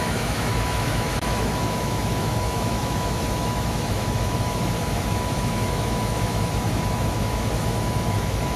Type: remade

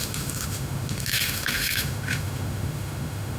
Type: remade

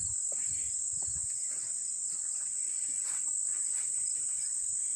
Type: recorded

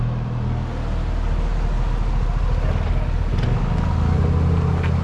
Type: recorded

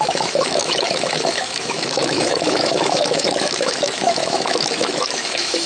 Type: remade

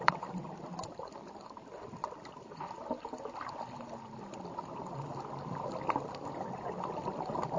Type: recorded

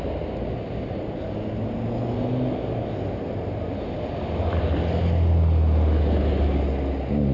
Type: recorded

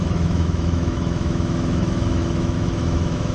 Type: remade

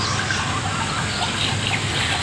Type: recorded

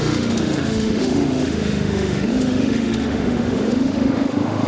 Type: remade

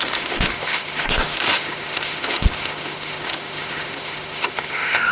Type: remade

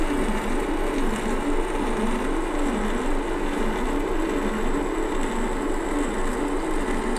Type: recorded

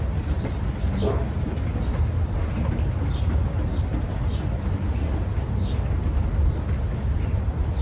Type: recorded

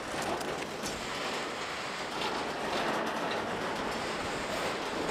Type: recorded